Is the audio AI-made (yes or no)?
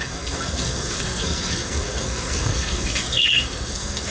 yes